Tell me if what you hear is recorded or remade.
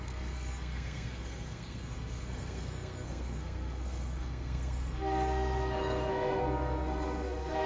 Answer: remade